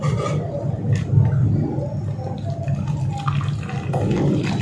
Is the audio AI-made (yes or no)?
no